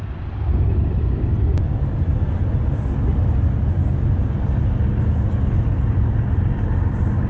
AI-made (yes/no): no